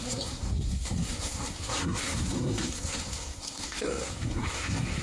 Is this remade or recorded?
remade